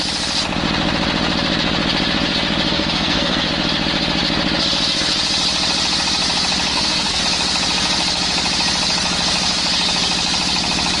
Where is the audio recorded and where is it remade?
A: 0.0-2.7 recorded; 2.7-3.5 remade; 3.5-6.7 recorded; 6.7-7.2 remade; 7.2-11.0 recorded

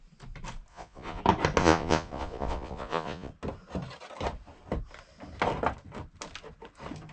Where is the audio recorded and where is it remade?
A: 0.0-0.7 recorded; 0.7-1.2 remade; 1.2-1.6 recorded; 1.6-3.3 remade; 3.3-7.1 recorded

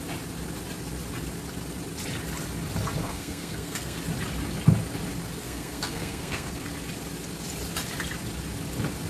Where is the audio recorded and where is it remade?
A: 0.0-3.0 recorded; 3.0-4.0 remade; 4.0-5.4 recorded; 5.4-6.7 remade; 6.7-9.1 recorded

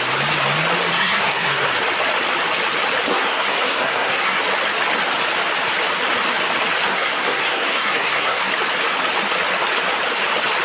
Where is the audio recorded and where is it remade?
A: 0.0-0.9 recorded; 0.9-1.7 remade; 1.7-3.1 recorded; 3.1-4.4 remade; 4.4-6.9 recorded; 6.9-8.5 remade; 8.5-10.6 recorded

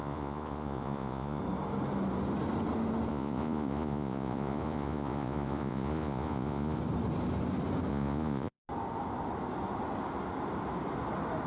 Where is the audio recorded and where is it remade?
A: 0.0-1.4 remade; 1.4-3.1 recorded; 3.1-6.8 remade; 6.8-7.9 recorded; 7.9-8.6 remade; 8.6-11.5 recorded